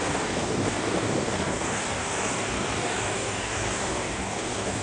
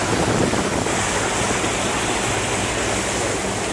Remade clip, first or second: first